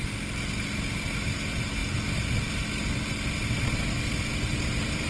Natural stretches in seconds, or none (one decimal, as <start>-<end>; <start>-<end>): 0.0-5.1